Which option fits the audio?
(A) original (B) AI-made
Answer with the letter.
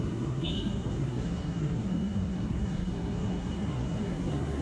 B